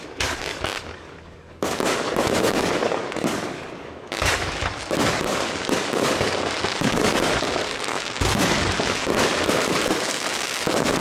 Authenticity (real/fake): fake